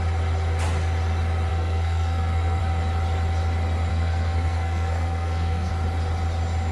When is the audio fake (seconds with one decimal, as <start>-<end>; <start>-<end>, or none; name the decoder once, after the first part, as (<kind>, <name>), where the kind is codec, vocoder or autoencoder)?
1.5-2.6 (codec, SNAC); 3.9-5.7